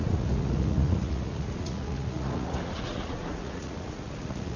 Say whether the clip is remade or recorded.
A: remade